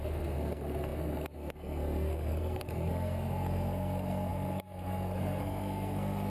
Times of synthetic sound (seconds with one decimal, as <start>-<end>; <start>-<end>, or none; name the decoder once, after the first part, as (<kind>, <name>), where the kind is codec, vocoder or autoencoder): 0.0-6.3 (codec, SNAC)